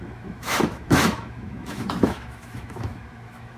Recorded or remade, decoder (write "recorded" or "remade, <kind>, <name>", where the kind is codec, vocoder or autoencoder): remade, autoencoder, DAC-VAE